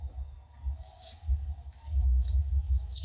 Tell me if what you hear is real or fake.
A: fake